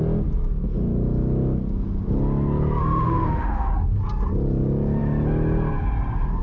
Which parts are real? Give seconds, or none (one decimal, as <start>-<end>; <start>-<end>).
0.0-2.8; 3.7-6.4